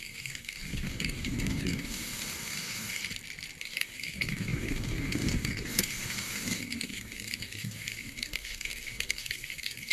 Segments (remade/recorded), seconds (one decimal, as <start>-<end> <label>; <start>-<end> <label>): 0.0-3.0 remade; 3.0-3.6 recorded; 3.6-9.9 remade